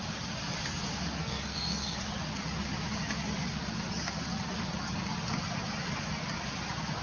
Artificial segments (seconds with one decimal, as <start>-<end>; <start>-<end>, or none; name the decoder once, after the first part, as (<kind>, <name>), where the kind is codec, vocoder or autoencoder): 1.2-2.0 (codec, SNAC)